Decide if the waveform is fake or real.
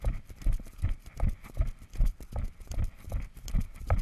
fake